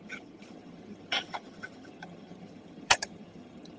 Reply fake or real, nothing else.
fake